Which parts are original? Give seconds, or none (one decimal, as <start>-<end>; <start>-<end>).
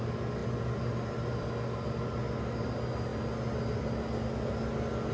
0.0-5.1